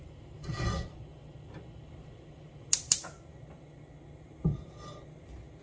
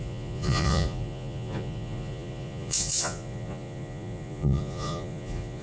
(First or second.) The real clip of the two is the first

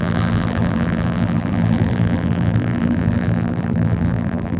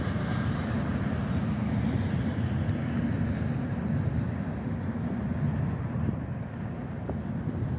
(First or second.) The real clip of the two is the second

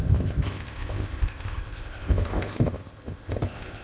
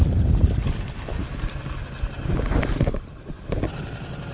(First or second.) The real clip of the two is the second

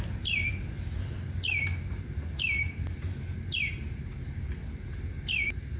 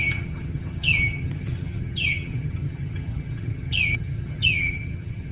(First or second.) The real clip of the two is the first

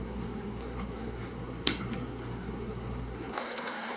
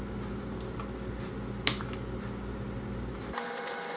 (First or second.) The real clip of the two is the second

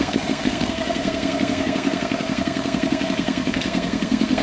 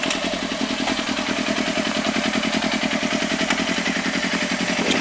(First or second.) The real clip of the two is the second